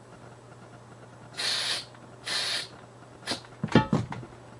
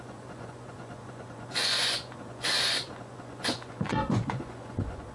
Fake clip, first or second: second